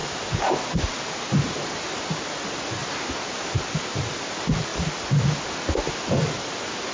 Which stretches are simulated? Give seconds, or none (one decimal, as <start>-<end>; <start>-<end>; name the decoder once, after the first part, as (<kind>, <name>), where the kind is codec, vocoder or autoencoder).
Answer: none